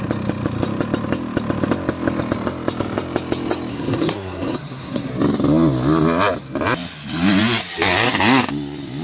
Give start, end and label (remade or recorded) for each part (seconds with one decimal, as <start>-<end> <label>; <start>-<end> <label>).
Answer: 0.0-3.7 recorded; 3.7-5.1 remade; 5.1-9.0 recorded